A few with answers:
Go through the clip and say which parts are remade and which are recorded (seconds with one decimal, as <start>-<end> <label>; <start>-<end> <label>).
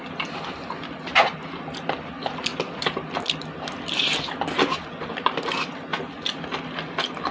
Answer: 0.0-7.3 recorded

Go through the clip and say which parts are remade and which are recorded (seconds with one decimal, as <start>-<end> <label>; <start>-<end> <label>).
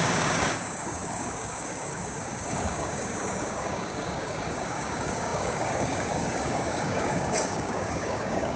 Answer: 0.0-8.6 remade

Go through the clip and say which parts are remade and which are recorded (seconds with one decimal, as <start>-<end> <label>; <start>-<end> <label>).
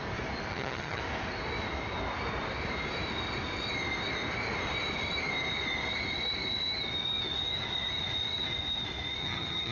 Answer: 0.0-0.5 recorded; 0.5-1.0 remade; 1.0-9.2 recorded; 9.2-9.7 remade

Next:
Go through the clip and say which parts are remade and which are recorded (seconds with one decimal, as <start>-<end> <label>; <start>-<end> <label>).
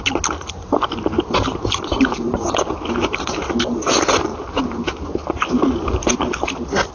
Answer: 0.0-6.9 recorded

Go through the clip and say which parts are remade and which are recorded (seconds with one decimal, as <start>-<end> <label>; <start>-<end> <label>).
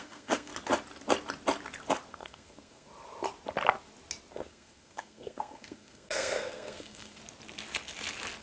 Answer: 0.0-0.5 remade; 0.5-2.1 recorded; 2.1-2.9 remade; 2.9-4.3 recorded; 4.3-7.2 remade; 7.2-8.4 recorded